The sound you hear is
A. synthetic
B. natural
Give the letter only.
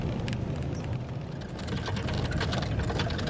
B